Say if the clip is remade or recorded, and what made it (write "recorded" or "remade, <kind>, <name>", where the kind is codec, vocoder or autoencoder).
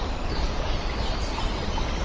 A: recorded